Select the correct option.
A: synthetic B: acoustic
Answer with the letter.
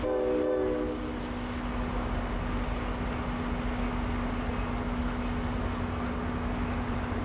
B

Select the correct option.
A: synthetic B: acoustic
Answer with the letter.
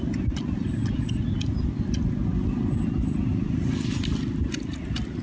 B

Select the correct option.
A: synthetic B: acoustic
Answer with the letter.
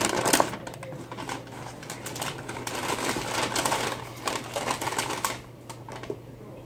B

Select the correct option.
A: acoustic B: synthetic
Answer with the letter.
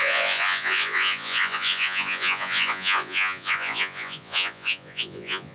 B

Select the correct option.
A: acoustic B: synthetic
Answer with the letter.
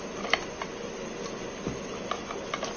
A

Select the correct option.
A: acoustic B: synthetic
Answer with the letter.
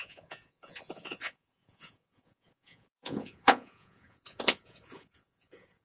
B